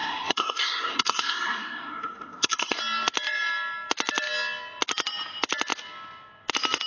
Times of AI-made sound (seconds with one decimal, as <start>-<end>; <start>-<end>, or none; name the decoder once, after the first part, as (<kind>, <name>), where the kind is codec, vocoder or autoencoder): 0.0-2.8 (codec, SNAC)